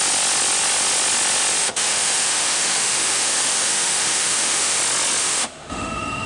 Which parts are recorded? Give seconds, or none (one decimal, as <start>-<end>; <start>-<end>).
0.0-1.6; 4.8-5.2